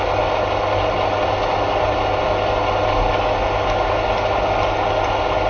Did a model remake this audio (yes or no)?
no